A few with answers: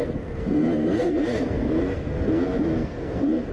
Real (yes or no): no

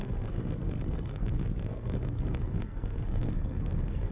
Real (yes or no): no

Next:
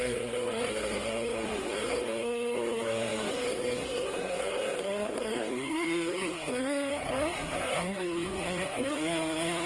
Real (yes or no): no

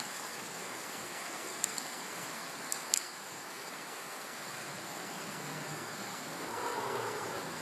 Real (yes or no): no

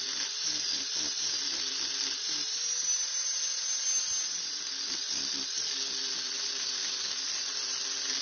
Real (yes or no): yes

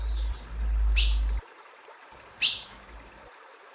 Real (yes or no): yes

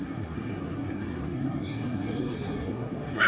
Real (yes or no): no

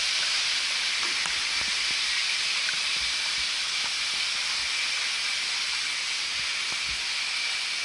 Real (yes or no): yes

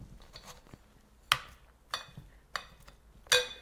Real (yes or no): yes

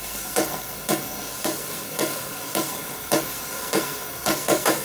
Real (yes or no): no